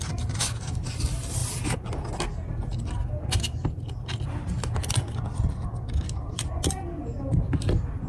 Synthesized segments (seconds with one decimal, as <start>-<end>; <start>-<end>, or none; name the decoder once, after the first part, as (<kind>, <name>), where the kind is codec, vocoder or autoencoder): none